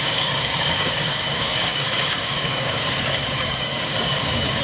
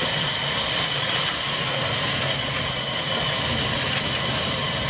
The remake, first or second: first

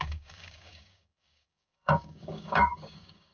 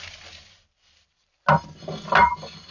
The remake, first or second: first